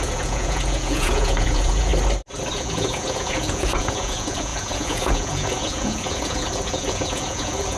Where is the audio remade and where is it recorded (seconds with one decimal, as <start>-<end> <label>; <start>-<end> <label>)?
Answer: 0.0-1.9 remade; 1.9-2.5 recorded; 2.5-7.8 remade